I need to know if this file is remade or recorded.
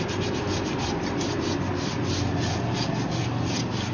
recorded